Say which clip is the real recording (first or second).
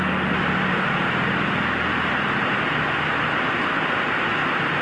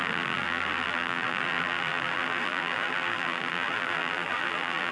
first